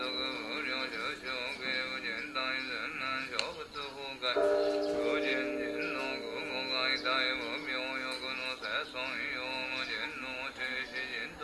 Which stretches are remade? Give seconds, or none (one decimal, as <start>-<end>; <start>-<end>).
none